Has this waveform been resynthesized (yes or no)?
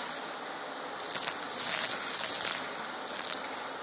no